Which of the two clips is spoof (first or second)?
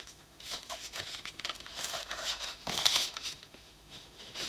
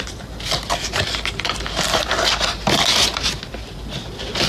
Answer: first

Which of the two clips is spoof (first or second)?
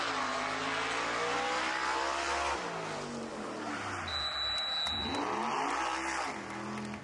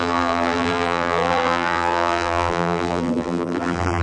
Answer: second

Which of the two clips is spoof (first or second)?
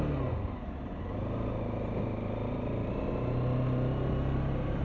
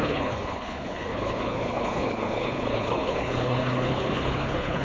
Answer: second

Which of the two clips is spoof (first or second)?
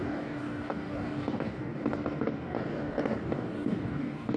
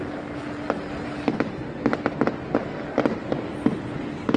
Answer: first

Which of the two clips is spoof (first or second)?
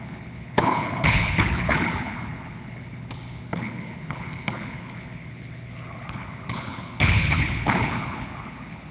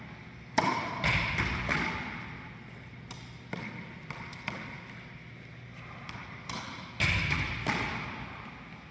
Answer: first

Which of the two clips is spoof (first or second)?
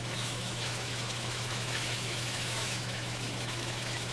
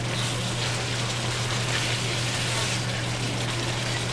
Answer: first